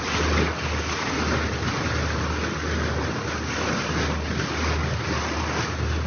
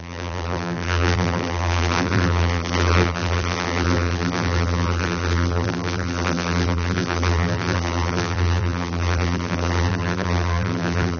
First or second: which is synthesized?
second